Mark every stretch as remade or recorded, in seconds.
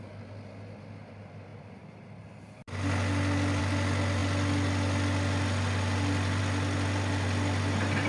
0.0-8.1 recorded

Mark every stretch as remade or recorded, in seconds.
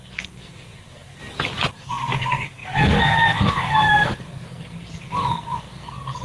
0.0-1.2 remade; 1.2-1.7 recorded; 1.7-6.2 remade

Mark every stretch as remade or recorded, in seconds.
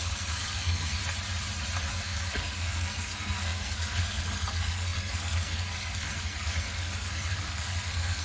0.0-1.0 remade; 1.0-1.9 recorded; 1.9-8.2 remade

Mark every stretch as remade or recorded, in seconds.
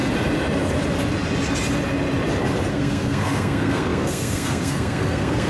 0.0-2.7 recorded; 2.7-5.5 remade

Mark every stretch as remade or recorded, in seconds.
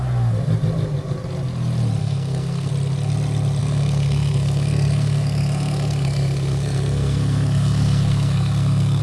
0.0-2.0 recorded; 2.0-2.7 remade; 2.7-3.6 recorded; 3.6-9.0 remade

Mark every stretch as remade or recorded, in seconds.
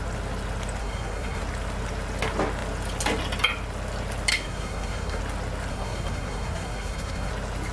0.0-0.8 recorded; 0.8-1.4 remade; 1.4-4.3 recorded; 4.3-5.2 remade; 5.2-5.7 recorded; 5.7-7.3 remade; 7.3-7.7 recorded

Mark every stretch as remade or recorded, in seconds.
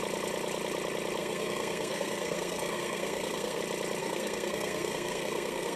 0.0-1.2 recorded; 1.2-3.6 remade; 3.6-4.0 recorded; 4.0-5.8 remade